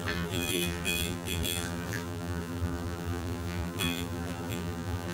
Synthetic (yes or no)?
yes